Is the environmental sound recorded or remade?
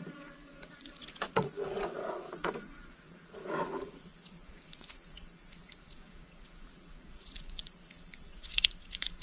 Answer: remade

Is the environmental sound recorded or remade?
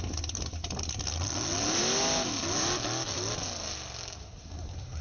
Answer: recorded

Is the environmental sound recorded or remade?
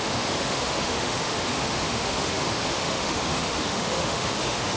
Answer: remade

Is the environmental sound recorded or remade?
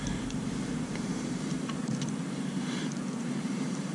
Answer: remade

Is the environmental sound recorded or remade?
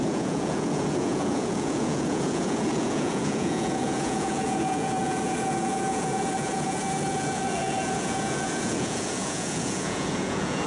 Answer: remade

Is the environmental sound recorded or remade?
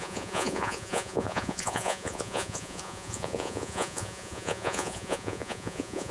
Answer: remade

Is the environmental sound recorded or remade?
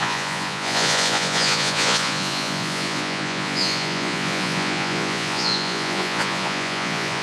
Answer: remade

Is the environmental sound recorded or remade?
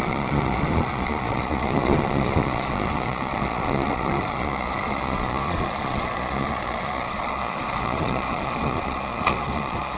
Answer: remade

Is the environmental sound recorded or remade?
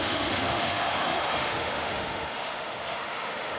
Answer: remade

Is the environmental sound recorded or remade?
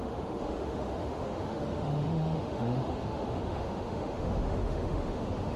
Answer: remade